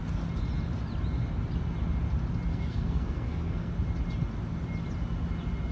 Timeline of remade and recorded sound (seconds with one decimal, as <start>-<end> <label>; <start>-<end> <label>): 0.0-2.5 recorded; 2.5-3.7 remade; 3.7-5.7 recorded